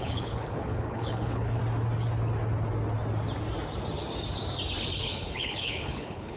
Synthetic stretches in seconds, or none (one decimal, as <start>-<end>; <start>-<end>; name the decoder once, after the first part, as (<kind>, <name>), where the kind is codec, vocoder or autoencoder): 0.0-1.6 (codec, HILCodec); 5.0-6.4